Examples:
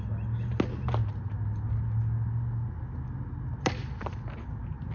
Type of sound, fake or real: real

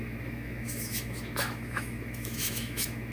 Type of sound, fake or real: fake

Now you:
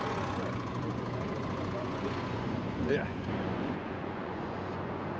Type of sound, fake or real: fake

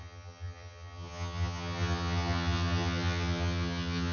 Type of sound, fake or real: fake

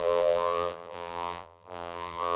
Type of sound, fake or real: fake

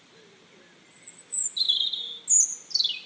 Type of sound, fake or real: real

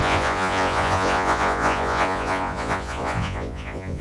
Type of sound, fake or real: fake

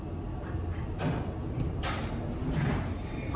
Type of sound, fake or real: real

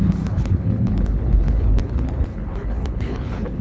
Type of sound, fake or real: fake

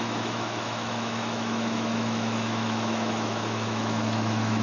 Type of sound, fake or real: fake